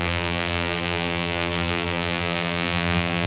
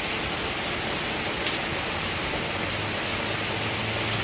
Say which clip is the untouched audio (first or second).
second